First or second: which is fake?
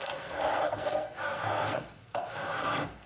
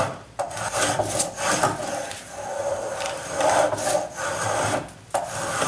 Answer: first